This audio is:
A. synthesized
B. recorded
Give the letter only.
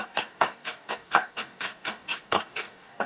A